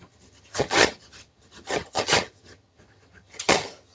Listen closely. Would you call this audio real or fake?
fake